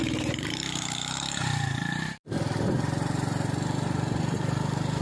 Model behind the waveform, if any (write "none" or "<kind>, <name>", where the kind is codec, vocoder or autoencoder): vocoder, BigVGAN v2